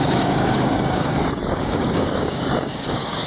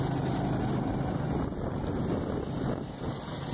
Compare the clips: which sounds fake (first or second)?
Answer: first